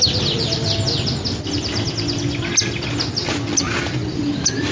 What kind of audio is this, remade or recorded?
recorded